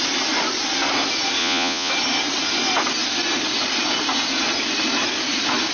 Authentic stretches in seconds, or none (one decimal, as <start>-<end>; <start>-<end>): 0.0-1.4; 1.9-5.7